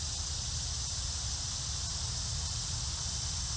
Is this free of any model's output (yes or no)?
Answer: yes